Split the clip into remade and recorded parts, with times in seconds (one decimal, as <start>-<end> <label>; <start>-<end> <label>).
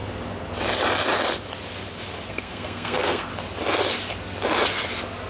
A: 0.0-2.3 recorded; 2.3-3.3 remade; 3.3-5.3 recorded